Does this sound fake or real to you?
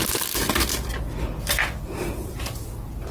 real